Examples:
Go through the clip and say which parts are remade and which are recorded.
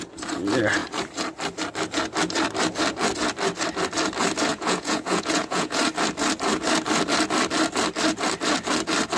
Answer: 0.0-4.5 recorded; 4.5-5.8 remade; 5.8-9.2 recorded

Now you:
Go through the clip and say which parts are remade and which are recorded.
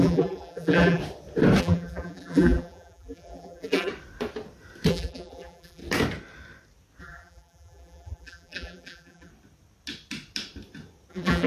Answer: 0.0-1.0 remade; 1.0-1.6 recorded; 1.6-3.9 remade; 3.9-4.9 recorded; 4.9-5.8 remade; 5.8-7.0 recorded; 7.0-9.3 remade; 9.3-11.1 recorded; 11.1-11.5 remade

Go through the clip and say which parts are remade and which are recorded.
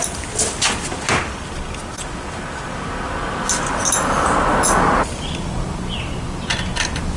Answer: 0.0-7.2 recorded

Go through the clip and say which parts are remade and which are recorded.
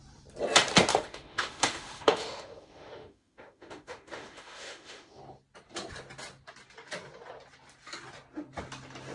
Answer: 0.0-0.9 recorded; 0.9-5.2 remade; 5.2-9.1 recorded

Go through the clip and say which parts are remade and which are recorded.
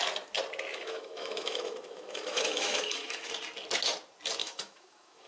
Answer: 0.0-0.7 recorded; 0.7-3.3 remade; 3.3-4.4 recorded; 4.4-5.3 remade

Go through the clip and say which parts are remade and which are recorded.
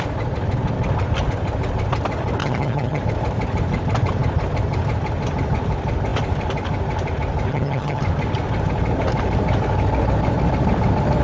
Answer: 0.0-2.4 recorded; 2.4-3.0 remade; 3.0-7.5 recorded; 7.5-8.0 remade; 8.0-11.2 recorded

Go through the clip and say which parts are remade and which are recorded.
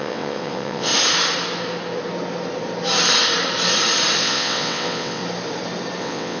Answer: 0.0-0.9 remade; 0.9-4.2 recorded; 4.2-5.2 remade; 5.2-6.0 recorded; 6.0-6.4 remade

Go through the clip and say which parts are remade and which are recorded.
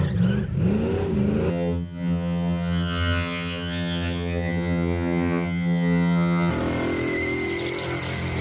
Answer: 0.0-1.5 recorded; 1.5-6.5 remade; 6.5-8.4 recorded